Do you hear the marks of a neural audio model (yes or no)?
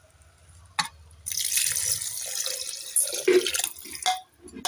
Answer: no